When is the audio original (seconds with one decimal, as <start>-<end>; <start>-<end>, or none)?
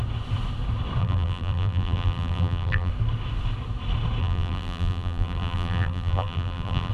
0.0-1.0; 2.9-4.2